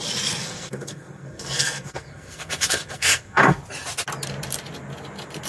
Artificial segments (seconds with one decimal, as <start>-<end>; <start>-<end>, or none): 0.4-3.6